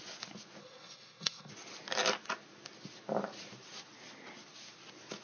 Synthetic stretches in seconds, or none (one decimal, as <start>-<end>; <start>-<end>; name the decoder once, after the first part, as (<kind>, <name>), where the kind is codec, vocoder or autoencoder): 0.6-1.5 (codec, SNAC)

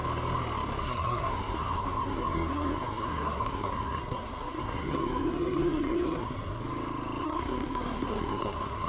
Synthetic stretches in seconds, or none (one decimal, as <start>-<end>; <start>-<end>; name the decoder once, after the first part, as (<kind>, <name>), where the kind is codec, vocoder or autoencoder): 0.8-6.6 (codec, SNAC); 7.2-8.9

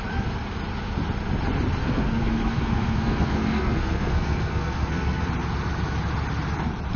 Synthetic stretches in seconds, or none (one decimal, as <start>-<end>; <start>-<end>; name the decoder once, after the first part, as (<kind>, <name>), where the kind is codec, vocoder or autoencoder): 1.8-5.3 (codec, SNAC)

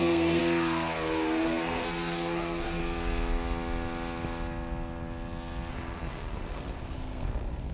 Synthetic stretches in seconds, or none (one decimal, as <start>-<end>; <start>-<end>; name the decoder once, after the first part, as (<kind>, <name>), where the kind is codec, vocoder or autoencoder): 0.0-0.4 (codec, SNAC); 1.4-2.8; 5.7-7.7

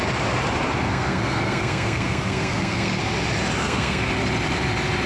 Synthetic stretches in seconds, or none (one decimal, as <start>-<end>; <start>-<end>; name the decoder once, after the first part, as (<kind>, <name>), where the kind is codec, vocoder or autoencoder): 0.9-3.0 (codec, SNAC); 3.6-4.1

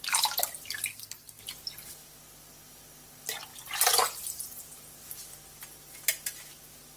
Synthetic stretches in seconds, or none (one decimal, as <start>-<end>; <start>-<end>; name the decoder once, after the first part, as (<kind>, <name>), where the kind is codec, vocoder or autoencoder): 0.9-1.4 (codec, SNAC)

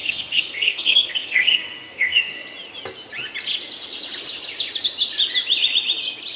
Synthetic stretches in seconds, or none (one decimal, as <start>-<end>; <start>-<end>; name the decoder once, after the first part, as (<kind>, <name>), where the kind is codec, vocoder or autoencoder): 0.0-2.4 (codec, SNAC)